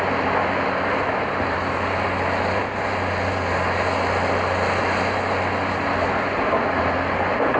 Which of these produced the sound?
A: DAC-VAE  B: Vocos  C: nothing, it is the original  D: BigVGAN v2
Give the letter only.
C